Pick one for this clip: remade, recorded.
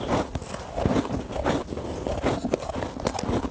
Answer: recorded